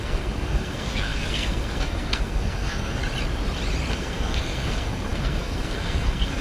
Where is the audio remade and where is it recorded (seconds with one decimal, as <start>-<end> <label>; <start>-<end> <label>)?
0.0-3.0 remade; 3.0-3.9 recorded; 3.9-6.4 remade